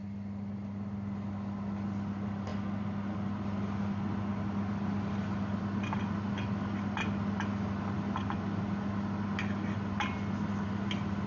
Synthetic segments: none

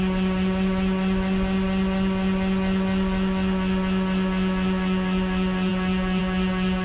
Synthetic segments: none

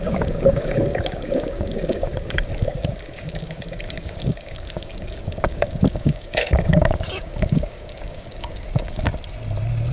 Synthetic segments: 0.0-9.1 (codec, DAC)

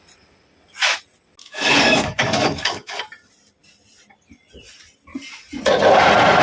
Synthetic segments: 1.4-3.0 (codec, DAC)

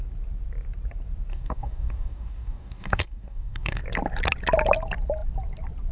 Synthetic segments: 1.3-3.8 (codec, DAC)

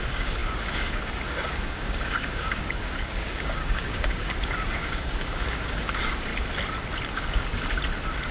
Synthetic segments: 0.0-6.3 (codec, DAC); 7.1-7.5

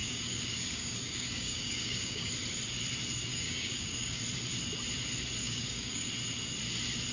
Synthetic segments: 0.0-2.3 (codec, DAC); 3.3-4.2; 5.4-6.1

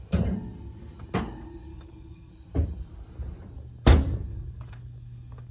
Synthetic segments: 1.7-2.3 (codec, DAC); 4.3-5.5